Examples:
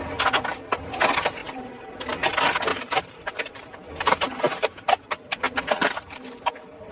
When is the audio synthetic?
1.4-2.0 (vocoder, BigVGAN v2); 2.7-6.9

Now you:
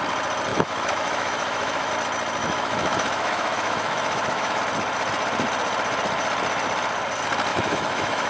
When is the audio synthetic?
0.5-1.9 (autoencoder, DAC-VAE); 2.4-4.6; 7.5-8.3

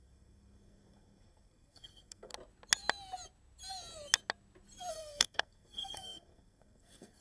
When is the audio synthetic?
0.0-2.3 (codec, SNAC); 4.9-7.2

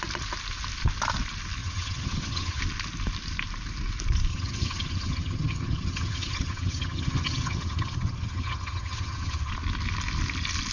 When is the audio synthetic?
1.6-2.6 (vocoder, HiFi-GAN); 4.3-9.5

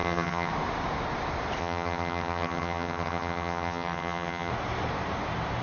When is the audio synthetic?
0.0-0.5 (vocoder, HiFi-GAN); 1.6-4.5

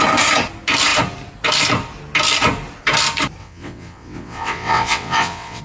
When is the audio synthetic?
3.4-5.6 (vocoder, WaveNeXt)

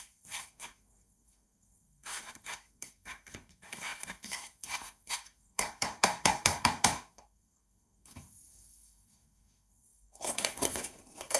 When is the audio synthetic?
0.0-11.4 (codec, SNAC)

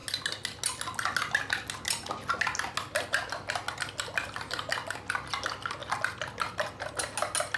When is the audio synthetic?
none